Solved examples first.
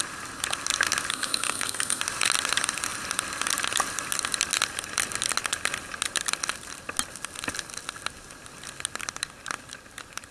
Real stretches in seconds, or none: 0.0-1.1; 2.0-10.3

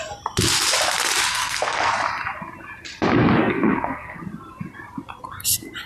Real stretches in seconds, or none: 0.0-1.3; 1.9-3.4; 4.2-5.9

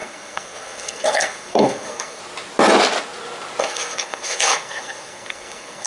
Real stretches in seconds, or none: 2.2-3.6

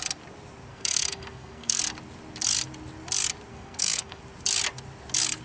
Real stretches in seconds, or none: 0.0-0.7; 1.8-3.5; 4.2-5.4